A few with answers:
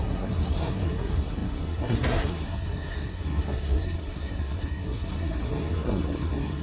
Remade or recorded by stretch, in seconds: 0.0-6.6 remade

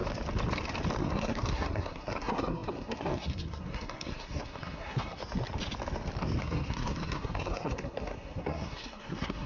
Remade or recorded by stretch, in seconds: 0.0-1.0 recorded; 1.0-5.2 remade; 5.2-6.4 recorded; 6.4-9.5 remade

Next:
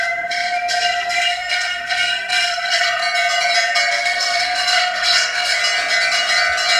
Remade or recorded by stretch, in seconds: 0.0-3.0 remade; 3.0-3.9 recorded; 3.9-5.6 remade; 5.6-6.8 recorded